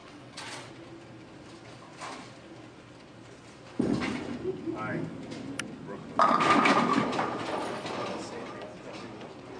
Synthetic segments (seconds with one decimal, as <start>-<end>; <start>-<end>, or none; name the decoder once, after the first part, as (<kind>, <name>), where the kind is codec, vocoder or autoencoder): 0.0-0.7 (vocoder, WaveNeXt)